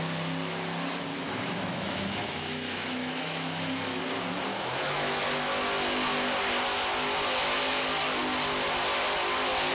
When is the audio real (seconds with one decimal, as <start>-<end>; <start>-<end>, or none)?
0.0-1.1; 4.0-4.5; 5.2-9.7